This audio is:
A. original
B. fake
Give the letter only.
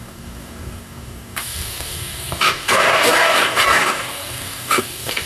B